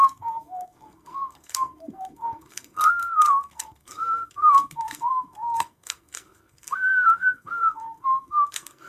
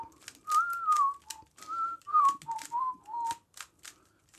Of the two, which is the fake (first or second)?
first